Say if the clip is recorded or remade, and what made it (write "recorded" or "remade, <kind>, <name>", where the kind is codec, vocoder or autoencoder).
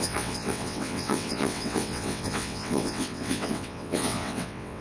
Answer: remade, vocoder, WaveNeXt